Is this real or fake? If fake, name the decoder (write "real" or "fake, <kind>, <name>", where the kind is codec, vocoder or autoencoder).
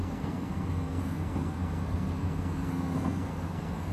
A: fake, codec, SNAC